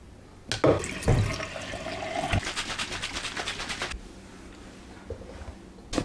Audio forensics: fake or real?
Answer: real